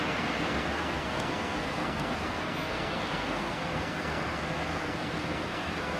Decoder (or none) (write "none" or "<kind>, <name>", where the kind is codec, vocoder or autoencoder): codec, SNAC